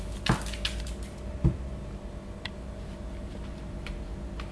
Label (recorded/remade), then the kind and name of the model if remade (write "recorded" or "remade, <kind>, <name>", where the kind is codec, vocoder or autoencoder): recorded